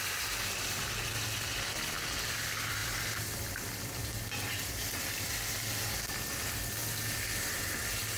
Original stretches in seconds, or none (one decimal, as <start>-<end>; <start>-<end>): 0.0-2.8; 5.5-8.2